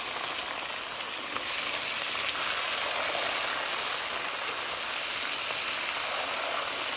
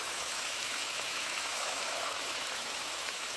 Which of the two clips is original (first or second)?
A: first